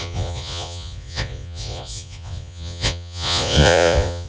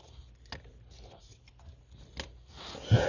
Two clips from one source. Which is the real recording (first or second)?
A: second